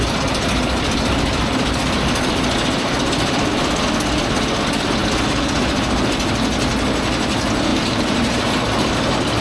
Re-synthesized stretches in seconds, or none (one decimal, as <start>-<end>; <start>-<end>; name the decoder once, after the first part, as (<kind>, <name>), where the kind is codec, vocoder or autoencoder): 7.7-8.5 (vocoder, BigVGAN v2)